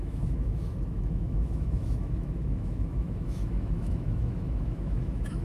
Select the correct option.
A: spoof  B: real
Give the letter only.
A